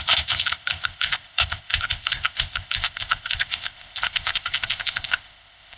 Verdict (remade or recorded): remade